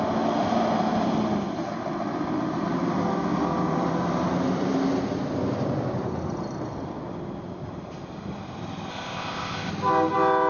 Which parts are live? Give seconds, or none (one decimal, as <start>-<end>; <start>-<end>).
0.0-8.9; 9.7-10.5